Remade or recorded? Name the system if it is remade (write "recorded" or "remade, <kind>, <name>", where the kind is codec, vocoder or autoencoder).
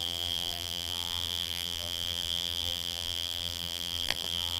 remade, vocoder, BigVGAN v2